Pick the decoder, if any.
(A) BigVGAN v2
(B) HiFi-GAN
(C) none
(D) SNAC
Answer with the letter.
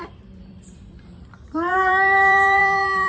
A